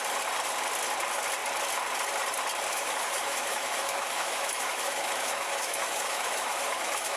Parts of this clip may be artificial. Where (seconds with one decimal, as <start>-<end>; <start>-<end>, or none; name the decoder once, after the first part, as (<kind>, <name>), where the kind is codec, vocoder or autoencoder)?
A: 2.7-7.2 (autoencoder, DAC-VAE)